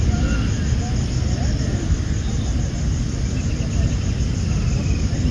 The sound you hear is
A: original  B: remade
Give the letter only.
A